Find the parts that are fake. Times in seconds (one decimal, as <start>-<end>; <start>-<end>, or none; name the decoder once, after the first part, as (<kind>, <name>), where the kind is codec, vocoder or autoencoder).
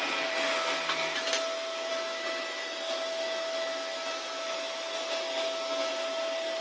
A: 1.9-5.9 (autoencoder, DAC-VAE)